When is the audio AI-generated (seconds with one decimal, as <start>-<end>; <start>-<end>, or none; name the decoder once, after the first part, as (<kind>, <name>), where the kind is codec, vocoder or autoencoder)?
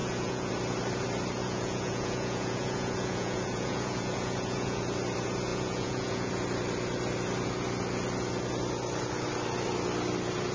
0.0-0.5 (vocoder, Vocos); 1.4-4.8; 5.5-6.3